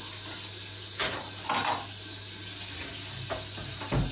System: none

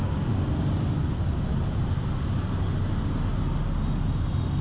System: none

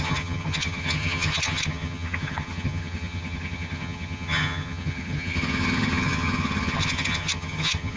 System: vocoder, HiFi-GAN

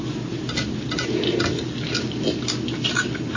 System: none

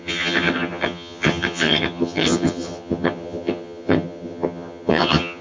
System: vocoder, HiFi-GAN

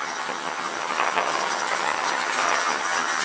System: vocoder, HiFi-GAN